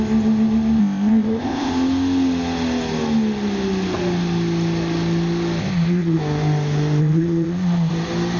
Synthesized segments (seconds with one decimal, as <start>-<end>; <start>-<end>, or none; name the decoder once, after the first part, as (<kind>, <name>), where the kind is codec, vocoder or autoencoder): 0.8-1.7 (codec, ZipCodec); 5.6-6.2; 7.0-7.9